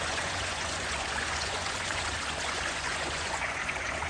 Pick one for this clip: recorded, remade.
remade